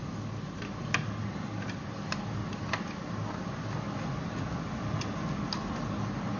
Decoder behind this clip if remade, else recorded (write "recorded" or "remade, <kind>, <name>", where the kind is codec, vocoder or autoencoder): recorded